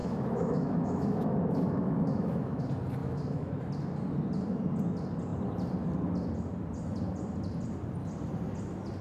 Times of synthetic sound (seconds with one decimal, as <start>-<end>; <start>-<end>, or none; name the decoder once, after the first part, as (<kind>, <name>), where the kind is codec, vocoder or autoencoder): 0.0-2.6 (autoencoder, DAC-VAE); 3.0-3.6